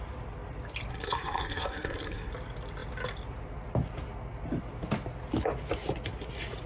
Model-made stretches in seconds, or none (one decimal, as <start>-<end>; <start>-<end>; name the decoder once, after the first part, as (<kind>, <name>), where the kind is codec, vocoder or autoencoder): 0.9-2.3 (codec, SNAC)